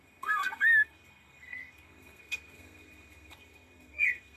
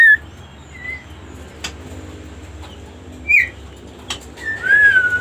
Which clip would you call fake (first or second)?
first